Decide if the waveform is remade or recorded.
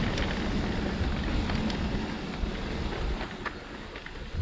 recorded